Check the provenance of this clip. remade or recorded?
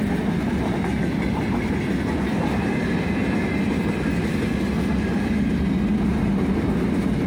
recorded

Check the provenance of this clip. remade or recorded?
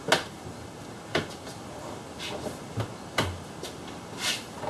recorded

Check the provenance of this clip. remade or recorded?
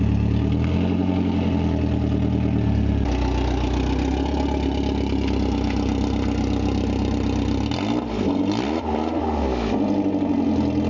recorded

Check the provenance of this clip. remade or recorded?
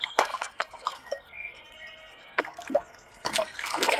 remade